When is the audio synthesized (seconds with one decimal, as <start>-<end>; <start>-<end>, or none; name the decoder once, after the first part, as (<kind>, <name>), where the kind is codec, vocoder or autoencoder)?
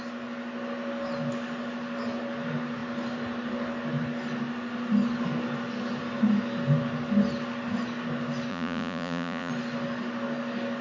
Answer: 8.5-9.5 (vocoder, Vocos)